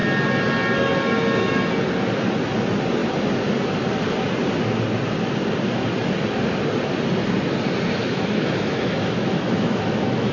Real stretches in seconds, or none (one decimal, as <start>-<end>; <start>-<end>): 0.0-8.0